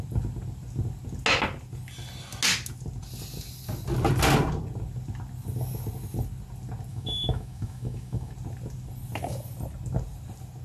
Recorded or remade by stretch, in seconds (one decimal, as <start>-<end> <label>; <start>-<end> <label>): 0.0-6.9 recorded; 6.9-8.3 remade; 8.3-10.6 recorded